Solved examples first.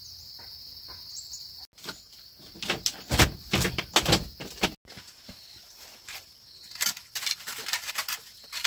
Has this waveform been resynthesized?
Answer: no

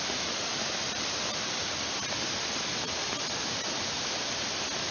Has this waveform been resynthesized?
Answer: no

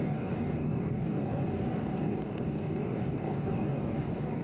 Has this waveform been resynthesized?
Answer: yes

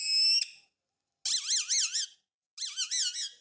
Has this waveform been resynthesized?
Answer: no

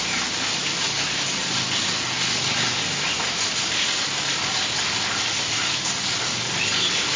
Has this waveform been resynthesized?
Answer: no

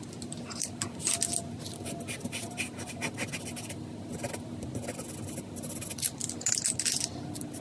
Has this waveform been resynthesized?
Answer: no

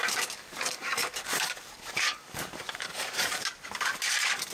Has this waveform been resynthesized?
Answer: yes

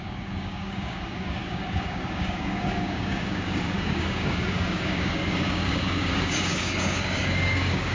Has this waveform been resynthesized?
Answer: yes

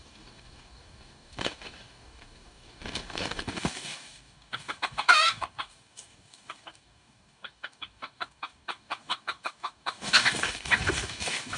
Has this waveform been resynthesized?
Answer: yes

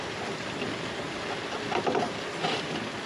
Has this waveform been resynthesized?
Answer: no